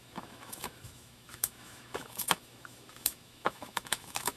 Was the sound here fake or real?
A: fake